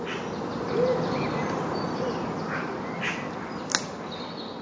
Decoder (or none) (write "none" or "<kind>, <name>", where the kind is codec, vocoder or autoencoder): none